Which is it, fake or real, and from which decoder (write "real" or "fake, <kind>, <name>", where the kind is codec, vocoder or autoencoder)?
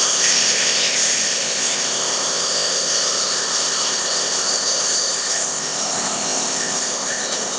fake, codec, ZipCodec